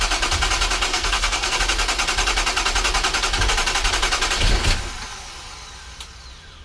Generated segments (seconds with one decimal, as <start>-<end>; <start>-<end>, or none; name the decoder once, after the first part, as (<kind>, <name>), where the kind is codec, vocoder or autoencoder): 0.9-1.6 (codec, SNAC)